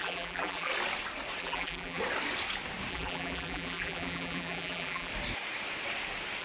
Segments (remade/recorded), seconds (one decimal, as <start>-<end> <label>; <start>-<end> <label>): 0.0-0.7 remade; 0.7-1.4 recorded; 1.4-2.0 remade; 2.0-2.9 recorded; 2.9-5.1 remade; 5.1-6.4 recorded